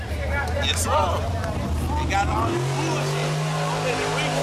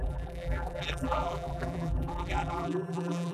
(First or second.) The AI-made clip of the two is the second